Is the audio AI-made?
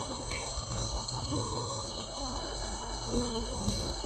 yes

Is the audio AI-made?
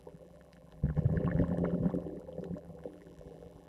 yes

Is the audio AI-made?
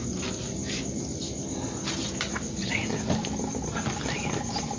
no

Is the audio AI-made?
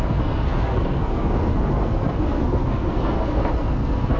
yes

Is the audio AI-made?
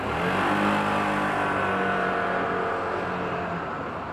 no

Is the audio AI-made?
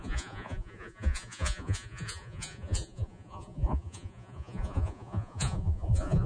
yes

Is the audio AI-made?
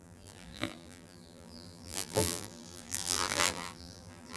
yes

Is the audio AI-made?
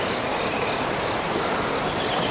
no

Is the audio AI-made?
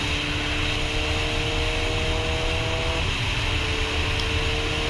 no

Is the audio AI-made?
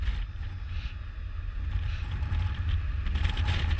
no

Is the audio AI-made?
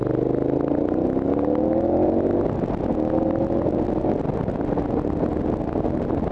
no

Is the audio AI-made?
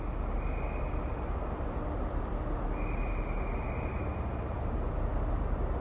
no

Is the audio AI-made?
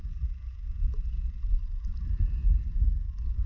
no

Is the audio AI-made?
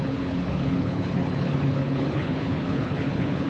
yes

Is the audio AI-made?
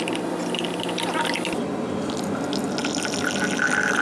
no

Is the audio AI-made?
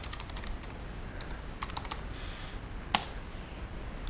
no